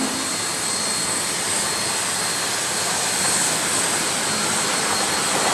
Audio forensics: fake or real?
real